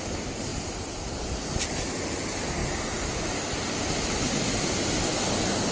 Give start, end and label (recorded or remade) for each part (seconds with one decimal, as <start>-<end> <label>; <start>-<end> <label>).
0.0-5.7 recorded

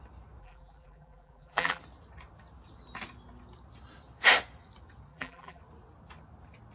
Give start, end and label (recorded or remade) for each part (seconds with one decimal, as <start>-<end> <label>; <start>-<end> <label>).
0.0-0.4 recorded; 0.4-1.8 remade; 1.8-5.1 recorded; 5.1-5.6 remade; 5.6-6.7 recorded

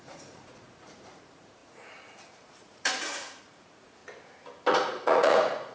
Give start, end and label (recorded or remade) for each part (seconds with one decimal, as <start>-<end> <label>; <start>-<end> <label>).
0.0-4.0 remade; 4.0-4.7 recorded; 4.7-5.7 remade

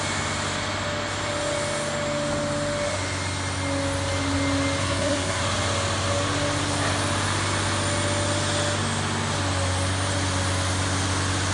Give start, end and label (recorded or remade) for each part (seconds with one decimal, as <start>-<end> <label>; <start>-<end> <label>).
0.0-4.8 recorded; 4.8-5.4 remade; 5.4-11.5 recorded

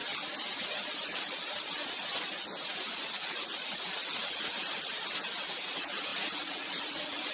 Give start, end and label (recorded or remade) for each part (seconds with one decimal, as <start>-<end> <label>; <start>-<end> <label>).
0.0-2.7 recorded; 2.7-4.0 remade; 4.0-5.6 recorded; 5.6-7.3 remade

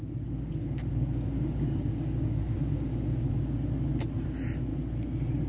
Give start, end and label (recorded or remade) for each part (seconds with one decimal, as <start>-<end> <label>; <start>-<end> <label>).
0.0-3.3 remade; 3.3-5.5 recorded